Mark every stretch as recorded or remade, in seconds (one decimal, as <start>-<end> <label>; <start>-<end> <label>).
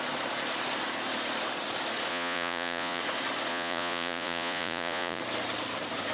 0.0-2.1 recorded; 2.1-3.0 remade; 3.0-3.5 recorded; 3.5-5.2 remade; 5.2-6.1 recorded